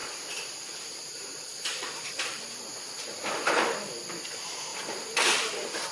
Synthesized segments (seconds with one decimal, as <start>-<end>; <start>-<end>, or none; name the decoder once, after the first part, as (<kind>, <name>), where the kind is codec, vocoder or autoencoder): 0.0-2.4 (vocoder, BigVGAN v2)